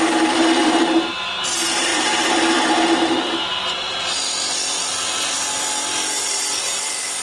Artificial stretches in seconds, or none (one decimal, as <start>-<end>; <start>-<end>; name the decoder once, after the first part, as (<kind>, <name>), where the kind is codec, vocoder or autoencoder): 0.6-1.3 (vocoder, BigVGAN v2); 1.9-4.9